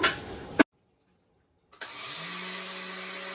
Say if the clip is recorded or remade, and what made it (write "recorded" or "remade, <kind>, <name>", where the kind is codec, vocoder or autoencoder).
recorded